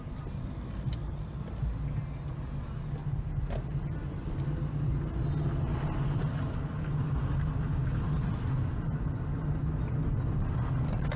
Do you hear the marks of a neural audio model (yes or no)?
no